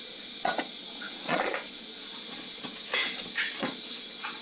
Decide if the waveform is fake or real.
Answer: fake